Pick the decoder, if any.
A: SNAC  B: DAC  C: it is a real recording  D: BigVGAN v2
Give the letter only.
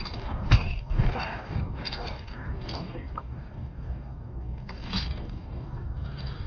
B